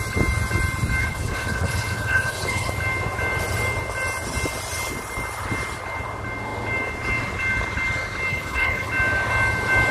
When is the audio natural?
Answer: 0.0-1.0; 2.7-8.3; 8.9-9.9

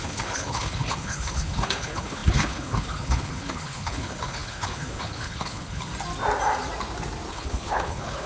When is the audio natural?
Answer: 5.9-7.3